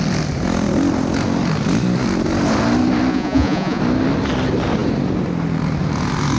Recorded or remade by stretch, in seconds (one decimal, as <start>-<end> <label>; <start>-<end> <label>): 0.0-3.1 recorded; 3.1-3.8 remade; 3.8-6.4 recorded